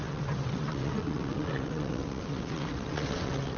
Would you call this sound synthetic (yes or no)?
yes